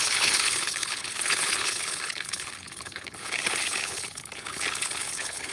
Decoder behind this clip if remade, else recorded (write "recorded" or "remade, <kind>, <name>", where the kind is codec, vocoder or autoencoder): remade, codec, HILCodec